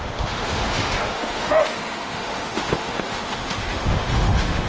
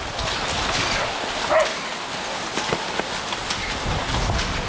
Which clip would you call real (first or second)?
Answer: second